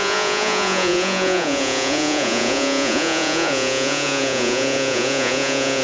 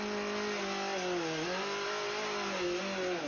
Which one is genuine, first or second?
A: second